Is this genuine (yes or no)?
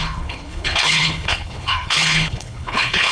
no